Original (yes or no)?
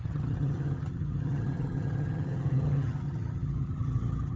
no